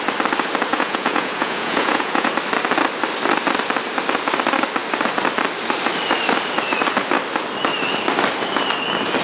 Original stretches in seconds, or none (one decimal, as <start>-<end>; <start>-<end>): 0.0-0.7; 2.3-9.2